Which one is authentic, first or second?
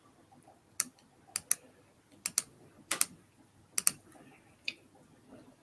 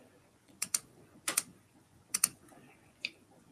first